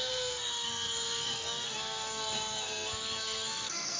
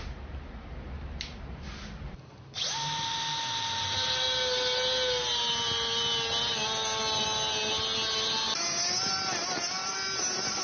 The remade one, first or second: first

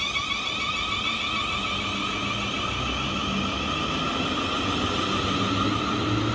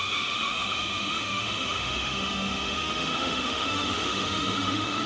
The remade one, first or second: second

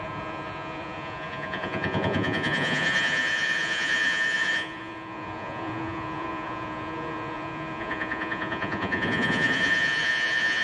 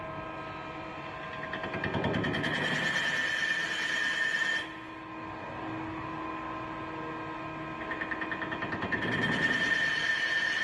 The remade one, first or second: first